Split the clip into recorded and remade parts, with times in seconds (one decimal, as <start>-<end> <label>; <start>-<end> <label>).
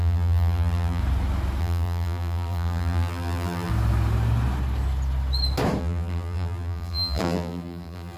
0.0-1.0 remade; 1.0-1.6 recorded; 1.6-3.7 remade; 3.7-5.8 recorded; 5.8-8.2 remade